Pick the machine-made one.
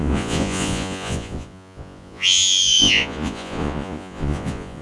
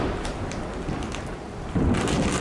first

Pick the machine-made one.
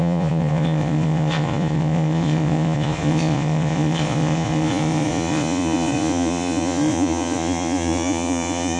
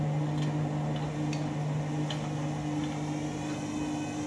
first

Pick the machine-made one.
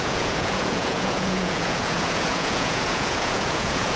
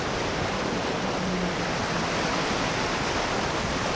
first